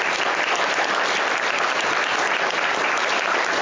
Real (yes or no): yes